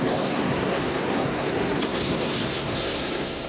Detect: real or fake fake